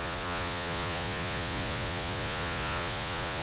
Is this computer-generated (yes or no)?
yes